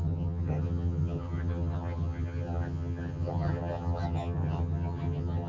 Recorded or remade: remade